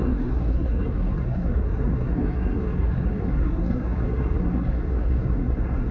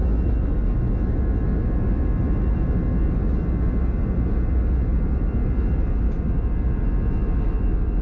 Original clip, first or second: second